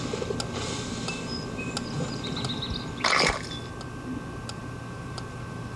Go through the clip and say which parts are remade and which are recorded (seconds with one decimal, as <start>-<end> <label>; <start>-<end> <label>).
0.0-4.6 recorded; 4.6-5.8 remade